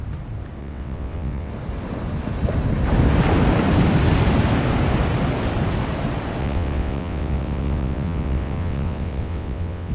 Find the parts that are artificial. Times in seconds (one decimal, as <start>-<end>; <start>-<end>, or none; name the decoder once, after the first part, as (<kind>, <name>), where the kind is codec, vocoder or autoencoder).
0.6-1.5 (vocoder, WaveNeXt); 6.4-9.9